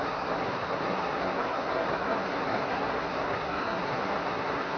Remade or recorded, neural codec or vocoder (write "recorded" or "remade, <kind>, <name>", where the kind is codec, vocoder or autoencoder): remade, codec, SNAC